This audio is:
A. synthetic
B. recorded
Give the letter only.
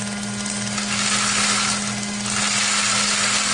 B